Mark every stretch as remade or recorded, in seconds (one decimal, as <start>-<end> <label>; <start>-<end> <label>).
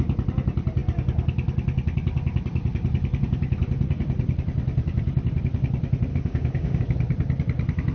0.0-6.1 recorded; 6.1-6.8 remade; 6.8-7.9 recorded